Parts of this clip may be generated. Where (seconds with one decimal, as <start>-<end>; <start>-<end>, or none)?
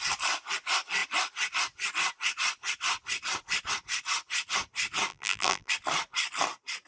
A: 5.1-5.7